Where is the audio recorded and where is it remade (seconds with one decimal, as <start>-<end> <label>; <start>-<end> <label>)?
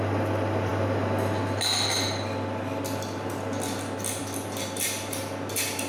0.0-5.9 recorded